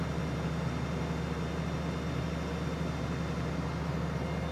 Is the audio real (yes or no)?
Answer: yes